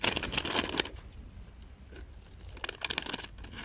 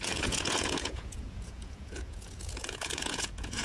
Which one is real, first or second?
first